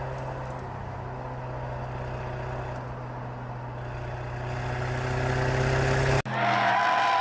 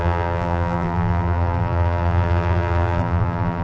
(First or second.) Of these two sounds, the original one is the first